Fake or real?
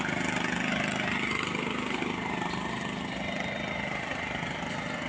real